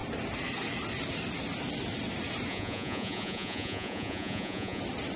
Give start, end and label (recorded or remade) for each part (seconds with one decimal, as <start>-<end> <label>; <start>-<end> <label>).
0.0-2.5 recorded; 2.5-4.8 remade; 4.8-5.2 recorded